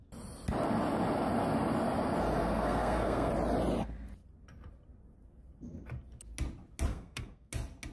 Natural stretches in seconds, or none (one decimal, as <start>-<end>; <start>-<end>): 0.0-2.4; 3.3-6.9; 7.5-7.9